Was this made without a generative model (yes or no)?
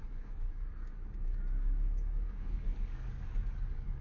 no